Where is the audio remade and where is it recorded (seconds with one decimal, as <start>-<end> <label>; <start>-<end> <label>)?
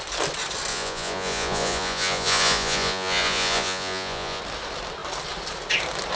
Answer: 0.0-0.7 recorded; 0.7-4.4 remade; 4.4-6.2 recorded